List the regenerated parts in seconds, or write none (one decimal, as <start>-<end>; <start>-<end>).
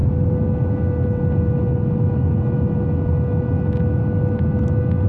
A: none